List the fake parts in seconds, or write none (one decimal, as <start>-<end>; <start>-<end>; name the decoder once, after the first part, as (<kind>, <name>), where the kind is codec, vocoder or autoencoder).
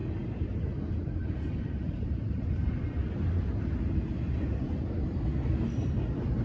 0.0-0.6 (vocoder, BigVGAN v2); 1.2-2.7